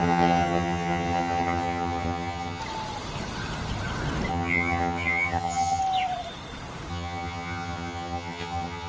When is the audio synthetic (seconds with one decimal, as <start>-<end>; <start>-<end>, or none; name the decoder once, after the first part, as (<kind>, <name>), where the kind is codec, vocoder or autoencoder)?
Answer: 0.0-2.6 (vocoder, HiFi-GAN); 4.3-5.8; 6.9-8.9